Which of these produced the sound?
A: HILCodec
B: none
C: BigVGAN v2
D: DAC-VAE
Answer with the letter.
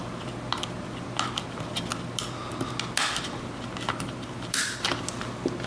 B